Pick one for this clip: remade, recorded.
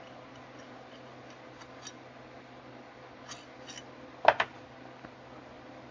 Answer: recorded